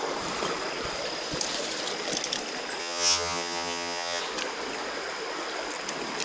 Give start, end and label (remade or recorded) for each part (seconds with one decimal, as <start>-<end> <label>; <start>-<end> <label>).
0.0-2.8 recorded; 2.8-4.2 remade; 4.2-6.2 recorded